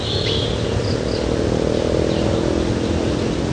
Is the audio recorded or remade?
recorded